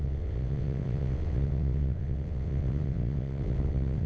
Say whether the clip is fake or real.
fake